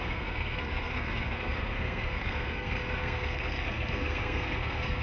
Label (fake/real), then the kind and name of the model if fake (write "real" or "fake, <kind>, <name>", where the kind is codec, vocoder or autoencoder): fake, codec, SNAC